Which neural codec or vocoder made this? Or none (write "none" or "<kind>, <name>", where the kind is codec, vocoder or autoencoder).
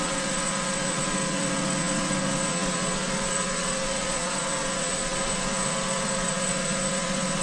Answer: vocoder, Vocos